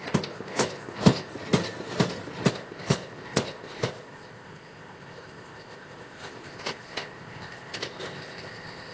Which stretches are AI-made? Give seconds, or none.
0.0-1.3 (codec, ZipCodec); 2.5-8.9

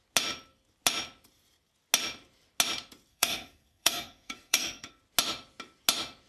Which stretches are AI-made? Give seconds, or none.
3.1-5.0 (codec, SNAC)

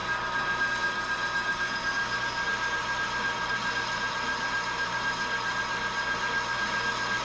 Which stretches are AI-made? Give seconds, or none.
none

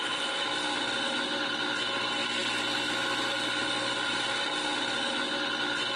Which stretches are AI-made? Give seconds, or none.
none

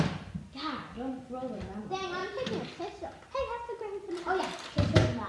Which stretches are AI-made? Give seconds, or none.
none

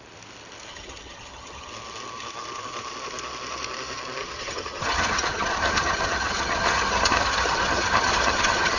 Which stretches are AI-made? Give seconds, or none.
0.7-1.7 (vocoder, HiFi-GAN); 4.2-8.8

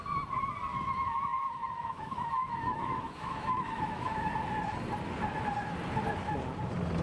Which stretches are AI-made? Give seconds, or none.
0.7-4.3 (autoencoder, DAC-VAE)